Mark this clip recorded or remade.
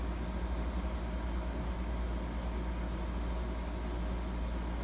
recorded